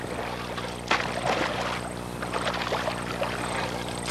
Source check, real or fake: real